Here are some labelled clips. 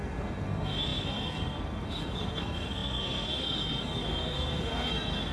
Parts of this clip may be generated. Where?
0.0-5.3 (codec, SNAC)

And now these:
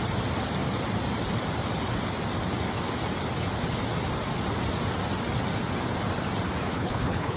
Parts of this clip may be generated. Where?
6.7-7.4 (codec, HILCodec)

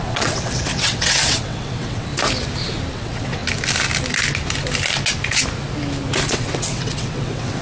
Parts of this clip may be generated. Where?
0.0-2.1 (vocoder, WaveNeXt); 2.9-3.4; 6.3-7.6